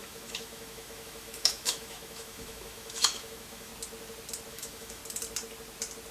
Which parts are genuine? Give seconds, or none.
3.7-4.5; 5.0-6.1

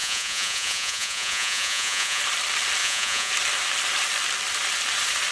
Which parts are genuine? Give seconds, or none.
2.2-2.8; 3.3-5.3

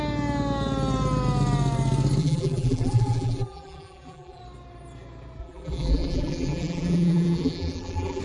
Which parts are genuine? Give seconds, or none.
0.0-2.2; 4.4-5.4

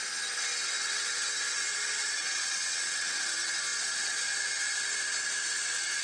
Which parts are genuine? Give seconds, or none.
0.0-2.0; 3.3-6.0

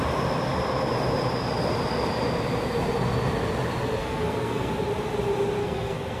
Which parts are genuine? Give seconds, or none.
0.0-4.0; 4.7-5.6